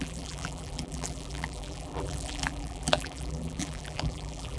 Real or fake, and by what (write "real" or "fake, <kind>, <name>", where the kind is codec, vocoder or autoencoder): fake, vocoder, BigVGAN v2